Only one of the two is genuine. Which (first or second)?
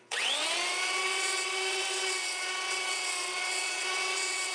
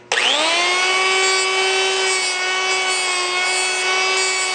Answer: second